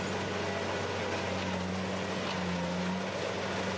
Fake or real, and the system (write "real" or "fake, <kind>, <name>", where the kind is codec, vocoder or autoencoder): real